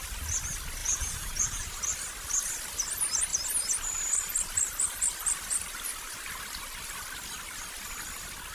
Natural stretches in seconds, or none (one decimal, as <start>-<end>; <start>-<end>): 0.0-0.8; 1.8-8.5

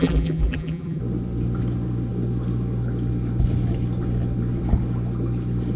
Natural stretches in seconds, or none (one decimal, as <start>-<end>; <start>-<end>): 1.0-5.8

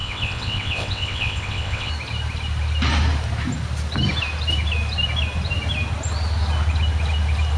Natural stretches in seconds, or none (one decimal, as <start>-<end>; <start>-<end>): 1.9-7.6

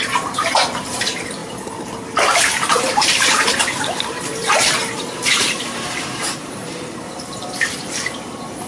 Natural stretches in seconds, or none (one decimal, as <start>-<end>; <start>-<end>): 1.4-2.9

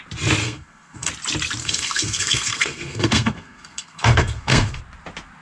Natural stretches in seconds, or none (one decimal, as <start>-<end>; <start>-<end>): 0.0-0.4; 1.1-1.6; 4.8-5.4

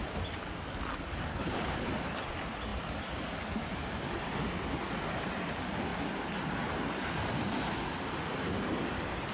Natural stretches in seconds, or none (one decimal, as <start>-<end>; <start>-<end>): 0.0-1.3; 1.9-9.3